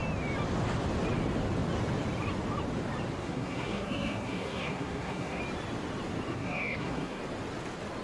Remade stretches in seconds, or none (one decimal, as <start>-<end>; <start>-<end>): 3.2-5.4; 6.3-7.2